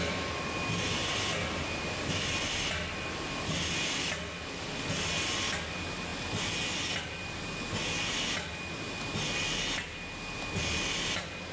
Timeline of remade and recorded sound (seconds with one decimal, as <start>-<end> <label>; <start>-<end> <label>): 0.0-11.5 recorded